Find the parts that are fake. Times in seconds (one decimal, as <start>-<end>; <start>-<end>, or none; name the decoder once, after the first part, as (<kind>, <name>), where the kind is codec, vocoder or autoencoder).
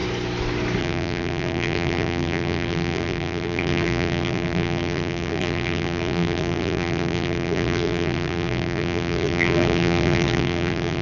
0.8-11.0 (vocoder, BigVGAN v2)